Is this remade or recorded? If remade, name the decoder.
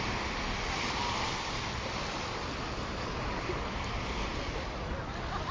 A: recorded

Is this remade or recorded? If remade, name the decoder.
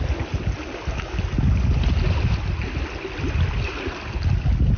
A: recorded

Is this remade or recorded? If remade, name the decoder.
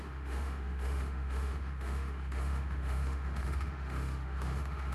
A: remade, autoencoder, DAC-VAE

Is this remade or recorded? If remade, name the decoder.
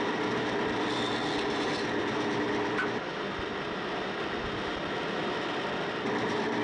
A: recorded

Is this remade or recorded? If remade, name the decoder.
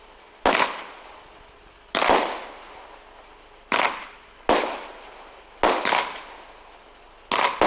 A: recorded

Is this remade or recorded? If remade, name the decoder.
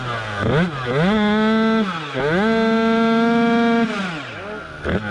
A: recorded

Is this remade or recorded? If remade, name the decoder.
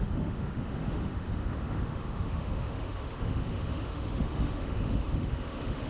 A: remade, autoencoder, DAC-VAE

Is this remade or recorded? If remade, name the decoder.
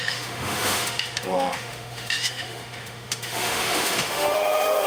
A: remade, autoencoder, DAC-VAE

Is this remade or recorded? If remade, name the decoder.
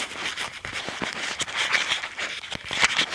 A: recorded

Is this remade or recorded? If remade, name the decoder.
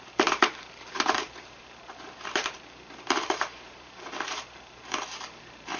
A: remade, vocoder, BigVGAN v2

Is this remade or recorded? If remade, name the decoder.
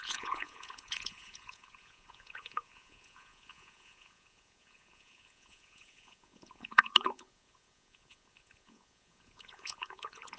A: remade, vocoder, Vocos